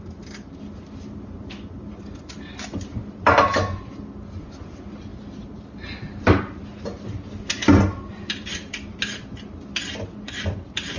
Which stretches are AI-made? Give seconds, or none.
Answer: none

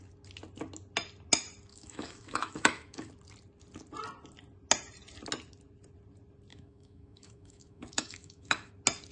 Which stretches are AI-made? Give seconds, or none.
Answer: 1.7-3.1 (autoencoder, DAC-VAE); 6.5-8.7

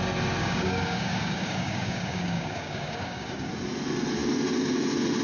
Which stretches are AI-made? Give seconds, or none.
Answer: 0.4-3.5 (codec, DAC)